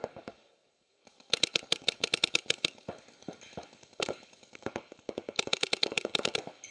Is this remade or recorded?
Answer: remade